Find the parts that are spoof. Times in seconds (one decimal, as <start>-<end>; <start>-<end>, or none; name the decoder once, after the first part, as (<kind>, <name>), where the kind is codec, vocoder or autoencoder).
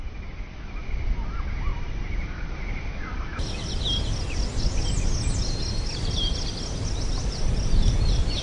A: 1.7-2.5 (vocoder, BigVGAN v2)